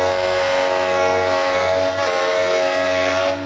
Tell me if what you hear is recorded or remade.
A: remade